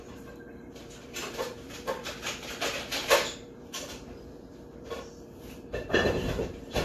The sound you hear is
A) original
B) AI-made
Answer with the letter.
B